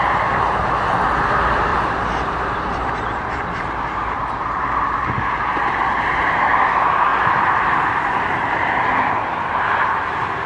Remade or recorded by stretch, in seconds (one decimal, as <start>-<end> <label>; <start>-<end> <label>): 0.0-1.7 recorded; 1.7-6.6 remade; 6.6-10.5 recorded